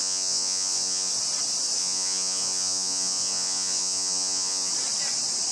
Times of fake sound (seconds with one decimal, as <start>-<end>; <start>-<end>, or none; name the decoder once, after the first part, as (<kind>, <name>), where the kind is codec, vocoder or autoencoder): 0.0-1.1 (vocoder, Vocos); 1.8-4.7